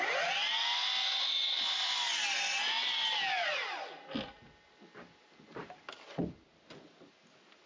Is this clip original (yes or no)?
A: yes